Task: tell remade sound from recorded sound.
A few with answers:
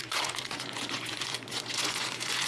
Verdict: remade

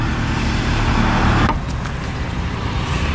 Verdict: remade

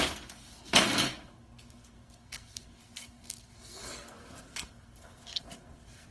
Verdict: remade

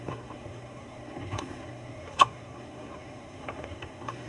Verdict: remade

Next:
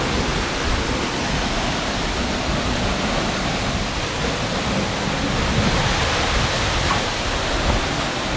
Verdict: recorded